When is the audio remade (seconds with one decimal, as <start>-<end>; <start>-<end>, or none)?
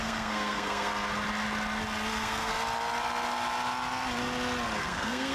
0.0-0.9; 2.1-2.5; 4.8-5.3